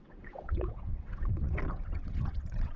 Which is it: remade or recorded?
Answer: remade